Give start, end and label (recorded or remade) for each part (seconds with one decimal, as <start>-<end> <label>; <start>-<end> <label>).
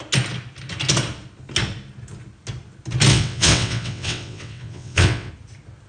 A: 0.0-3.1 recorded; 3.1-5.3 remade; 5.3-5.9 recorded